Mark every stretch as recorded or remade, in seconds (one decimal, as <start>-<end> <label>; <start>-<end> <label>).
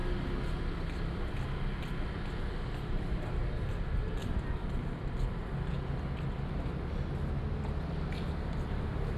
0.0-9.2 recorded